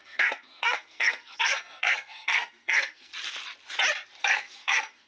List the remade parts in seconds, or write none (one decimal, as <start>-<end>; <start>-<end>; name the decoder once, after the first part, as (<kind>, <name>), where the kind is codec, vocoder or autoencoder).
0.0-3.1 (codec, SNAC); 4.2-5.1